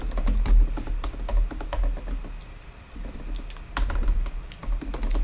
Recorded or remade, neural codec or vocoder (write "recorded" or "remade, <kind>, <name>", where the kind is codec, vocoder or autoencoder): recorded